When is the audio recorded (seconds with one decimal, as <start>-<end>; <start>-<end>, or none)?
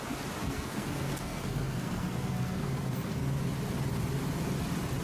0.0-0.4; 3.4-5.0